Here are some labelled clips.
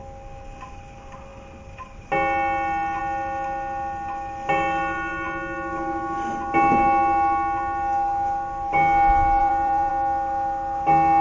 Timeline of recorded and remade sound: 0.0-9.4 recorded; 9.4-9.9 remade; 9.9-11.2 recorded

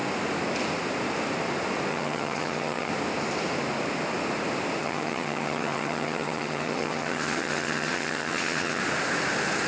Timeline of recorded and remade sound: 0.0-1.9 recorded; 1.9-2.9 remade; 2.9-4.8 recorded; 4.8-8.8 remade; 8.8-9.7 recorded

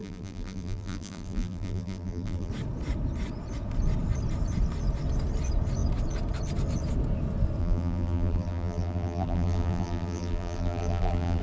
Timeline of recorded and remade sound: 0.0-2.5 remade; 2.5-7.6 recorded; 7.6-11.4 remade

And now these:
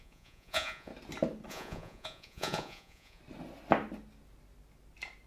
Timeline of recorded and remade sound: 0.0-0.9 remade; 0.9-1.5 recorded; 1.5-3.2 remade; 3.2-5.3 recorded

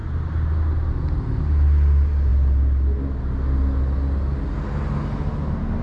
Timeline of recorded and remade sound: 0.0-5.8 recorded

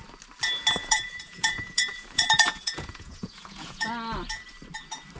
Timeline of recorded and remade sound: 0.0-0.8 recorded; 0.8-3.9 remade; 3.9-5.2 recorded